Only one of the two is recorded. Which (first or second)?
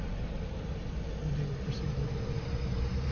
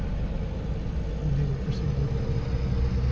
second